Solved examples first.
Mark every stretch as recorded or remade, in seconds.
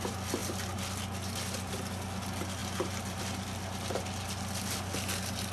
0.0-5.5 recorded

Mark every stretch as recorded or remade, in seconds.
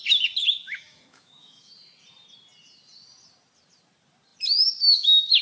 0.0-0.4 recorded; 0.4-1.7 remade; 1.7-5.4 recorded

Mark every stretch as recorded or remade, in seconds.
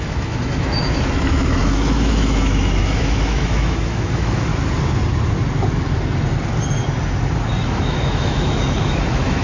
0.0-4.5 remade; 4.5-7.6 recorded; 7.6-9.4 remade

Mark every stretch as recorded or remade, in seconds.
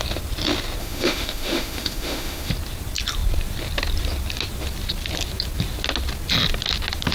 0.0-0.8 recorded; 0.8-2.5 remade; 2.5-7.1 recorded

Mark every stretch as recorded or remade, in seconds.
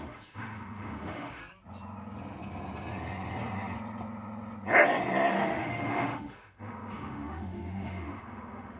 0.0-1.4 remade; 1.4-5.3 recorded; 5.3-8.8 remade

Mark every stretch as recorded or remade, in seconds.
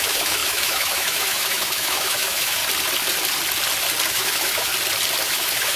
0.0-2.6 remade; 2.6-4.1 recorded; 4.1-4.7 remade; 4.7-5.2 recorded; 5.2-5.8 remade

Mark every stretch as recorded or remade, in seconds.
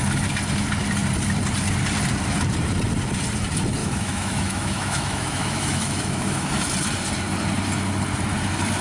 0.0-3.8 recorded; 3.8-6.5 remade; 6.5-8.8 recorded